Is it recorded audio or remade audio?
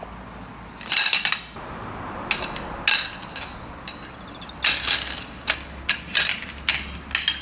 recorded